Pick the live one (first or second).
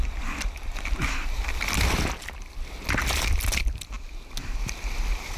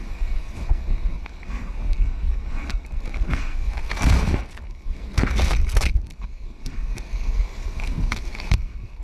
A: first